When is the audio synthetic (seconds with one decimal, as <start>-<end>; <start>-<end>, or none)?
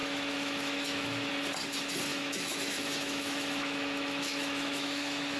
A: 0.0-1.3; 2.1-5.4